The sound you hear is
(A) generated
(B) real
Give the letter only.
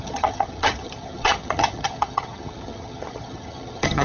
A